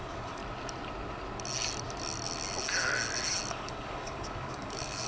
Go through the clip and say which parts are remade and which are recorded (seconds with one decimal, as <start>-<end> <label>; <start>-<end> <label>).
0.0-0.4 remade; 0.4-3.5 recorded; 3.5-5.1 remade